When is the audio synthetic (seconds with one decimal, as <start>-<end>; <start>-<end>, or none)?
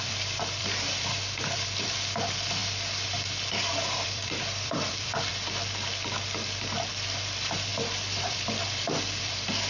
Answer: 0.0-2.6; 3.7-5.3; 6.9-7.7; 8.2-9.7